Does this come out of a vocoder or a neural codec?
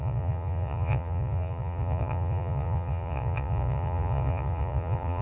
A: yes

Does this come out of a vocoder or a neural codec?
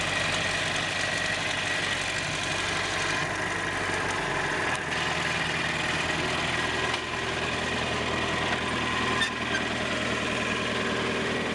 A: no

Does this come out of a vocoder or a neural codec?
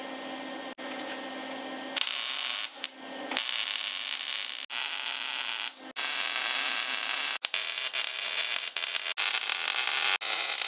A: no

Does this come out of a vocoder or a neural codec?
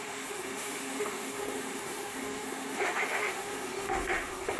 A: yes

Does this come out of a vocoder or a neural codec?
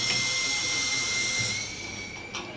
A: no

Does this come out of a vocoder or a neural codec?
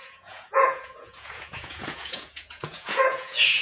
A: yes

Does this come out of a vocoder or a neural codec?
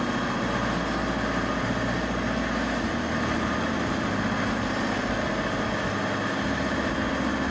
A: no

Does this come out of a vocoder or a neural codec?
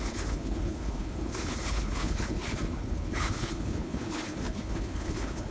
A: yes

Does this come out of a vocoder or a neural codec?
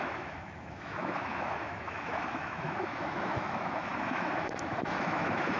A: yes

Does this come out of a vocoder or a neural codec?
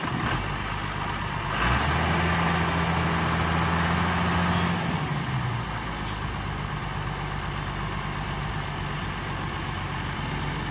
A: no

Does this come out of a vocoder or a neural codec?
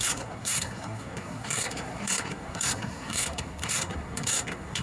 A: yes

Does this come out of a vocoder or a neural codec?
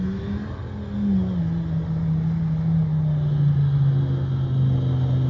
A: no